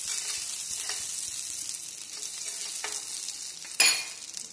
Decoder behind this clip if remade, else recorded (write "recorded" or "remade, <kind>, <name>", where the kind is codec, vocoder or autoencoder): recorded